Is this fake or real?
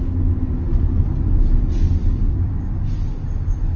real